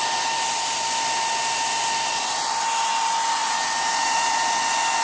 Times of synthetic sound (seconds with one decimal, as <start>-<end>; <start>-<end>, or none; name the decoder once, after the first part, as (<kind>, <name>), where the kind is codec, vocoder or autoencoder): 3.4-4.3 (vocoder, BigVGAN v2)